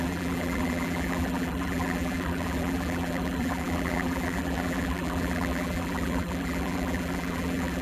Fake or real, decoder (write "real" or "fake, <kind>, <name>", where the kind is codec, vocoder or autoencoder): fake, vocoder, BigVGAN v2